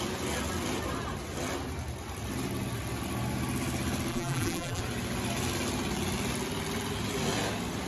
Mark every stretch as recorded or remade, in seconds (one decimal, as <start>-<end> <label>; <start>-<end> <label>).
0.0-4.1 recorded; 4.1-4.8 remade; 4.8-7.9 recorded